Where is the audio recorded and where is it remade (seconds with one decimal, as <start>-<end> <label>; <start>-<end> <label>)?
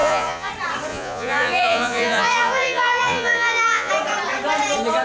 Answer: 0.0-0.5 remade; 0.5-0.9 recorded; 0.9-3.9 remade; 3.9-5.0 recorded